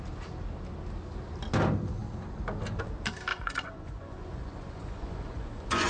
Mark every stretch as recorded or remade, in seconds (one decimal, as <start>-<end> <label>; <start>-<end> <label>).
0.0-3.3 recorded; 3.3-5.9 remade